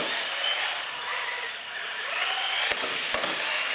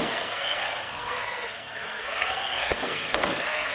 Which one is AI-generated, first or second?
second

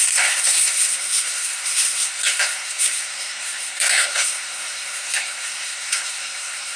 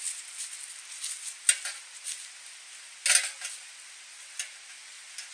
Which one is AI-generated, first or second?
first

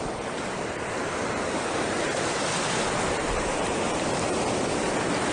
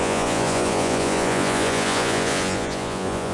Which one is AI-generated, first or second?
second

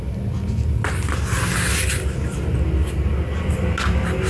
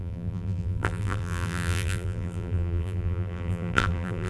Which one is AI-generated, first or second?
second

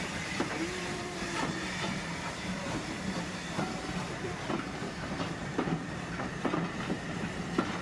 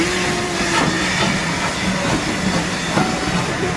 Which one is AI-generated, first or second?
first